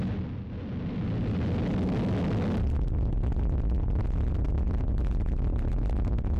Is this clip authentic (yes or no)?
yes